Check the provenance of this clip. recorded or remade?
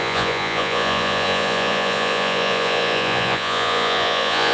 remade